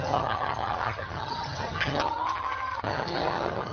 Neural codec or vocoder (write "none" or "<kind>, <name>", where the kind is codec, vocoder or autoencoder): vocoder, HiFi-GAN